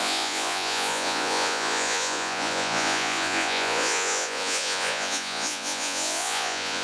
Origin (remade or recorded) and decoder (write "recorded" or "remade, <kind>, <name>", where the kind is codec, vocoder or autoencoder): remade, vocoder, Vocos